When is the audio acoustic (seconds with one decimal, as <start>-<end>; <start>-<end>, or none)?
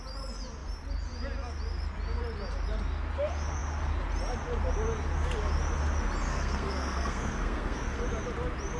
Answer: 0.0-6.3; 8.0-8.8